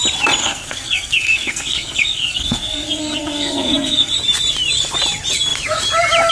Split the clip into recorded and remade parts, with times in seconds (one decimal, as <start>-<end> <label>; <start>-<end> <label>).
0.0-0.4 recorded; 0.4-4.1 remade; 4.1-6.3 recorded